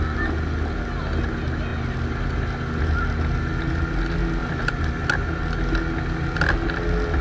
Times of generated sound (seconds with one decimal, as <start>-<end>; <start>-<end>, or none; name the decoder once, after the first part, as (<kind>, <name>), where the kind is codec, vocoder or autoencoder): 4.4-5.0 (vocoder, BigVGAN v2)